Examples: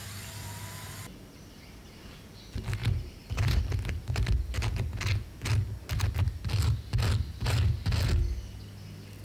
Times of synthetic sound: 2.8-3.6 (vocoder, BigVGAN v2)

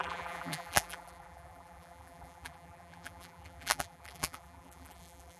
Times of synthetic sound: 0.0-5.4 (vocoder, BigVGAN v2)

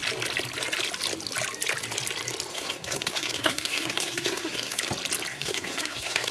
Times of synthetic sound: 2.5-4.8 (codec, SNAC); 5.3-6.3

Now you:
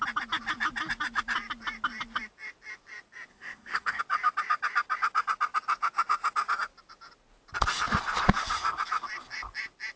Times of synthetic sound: 3.3-4.0 (codec, SNAC)